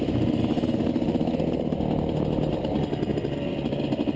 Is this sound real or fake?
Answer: real